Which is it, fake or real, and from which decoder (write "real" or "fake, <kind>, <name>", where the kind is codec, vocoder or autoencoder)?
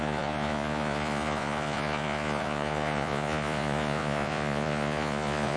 fake, vocoder, Vocos